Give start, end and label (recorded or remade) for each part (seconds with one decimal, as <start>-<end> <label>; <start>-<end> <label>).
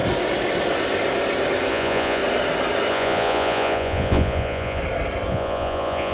0.0-1.7 recorded; 1.7-2.2 remade; 2.2-2.9 recorded; 2.9-4.8 remade; 4.8-5.3 recorded; 5.3-6.1 remade